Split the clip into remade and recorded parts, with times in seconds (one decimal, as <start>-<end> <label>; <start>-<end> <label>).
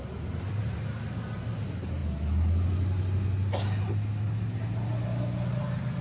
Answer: 0.0-6.0 recorded